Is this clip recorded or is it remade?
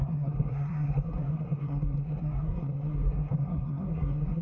remade